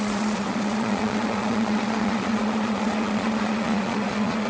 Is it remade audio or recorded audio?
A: remade